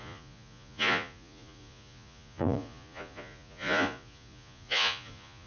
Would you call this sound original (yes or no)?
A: no